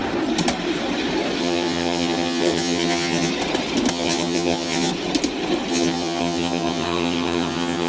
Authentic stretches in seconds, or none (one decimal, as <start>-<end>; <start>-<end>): 0.0-1.4; 3.3-3.9; 4.9-5.7